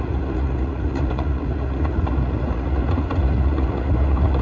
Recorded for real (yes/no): no